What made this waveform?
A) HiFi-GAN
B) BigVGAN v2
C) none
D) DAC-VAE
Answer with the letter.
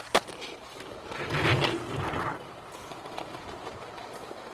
B